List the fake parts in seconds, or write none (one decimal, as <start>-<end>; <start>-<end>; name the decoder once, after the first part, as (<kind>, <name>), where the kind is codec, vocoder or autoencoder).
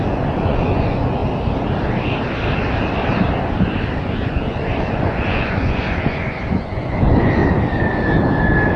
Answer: 0.0-1.2 (vocoder, Vocos); 4.0-7.4